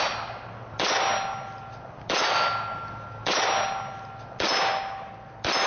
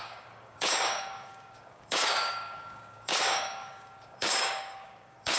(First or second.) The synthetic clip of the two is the second